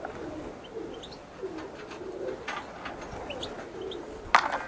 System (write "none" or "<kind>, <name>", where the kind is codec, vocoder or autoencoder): none